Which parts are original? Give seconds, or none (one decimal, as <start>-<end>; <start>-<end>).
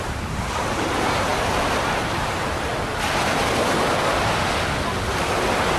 1.3-2.0; 2.7-5.2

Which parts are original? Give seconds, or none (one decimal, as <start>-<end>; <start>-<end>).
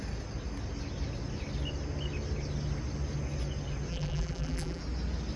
0.0-3.9; 4.8-5.4